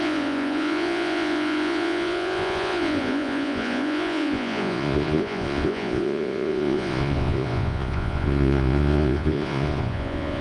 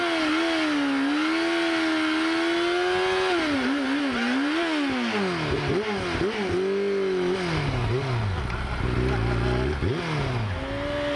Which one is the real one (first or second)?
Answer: second